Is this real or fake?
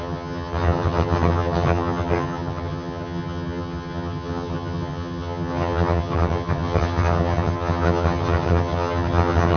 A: fake